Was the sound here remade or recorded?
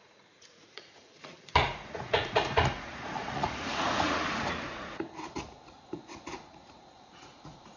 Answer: remade